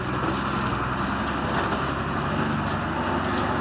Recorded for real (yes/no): yes